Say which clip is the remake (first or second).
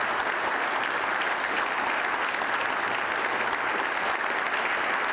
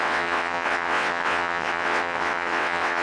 second